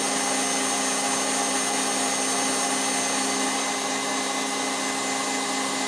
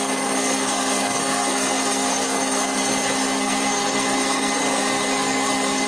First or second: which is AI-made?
second